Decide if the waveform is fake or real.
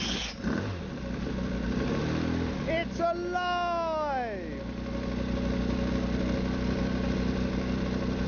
real